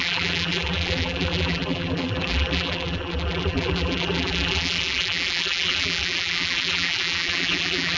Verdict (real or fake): fake